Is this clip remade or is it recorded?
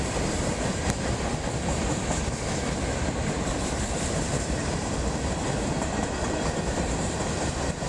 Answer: remade